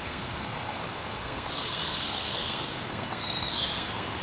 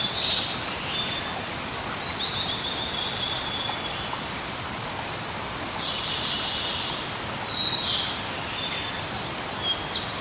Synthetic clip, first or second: first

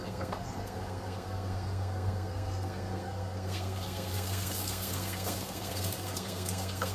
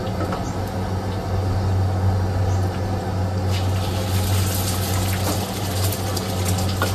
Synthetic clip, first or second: first